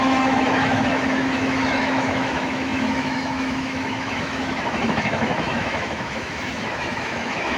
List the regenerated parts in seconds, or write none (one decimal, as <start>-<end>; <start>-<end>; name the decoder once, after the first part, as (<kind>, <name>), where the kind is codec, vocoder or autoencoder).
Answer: 0.0-7.6 (autoencoder, DAC-VAE)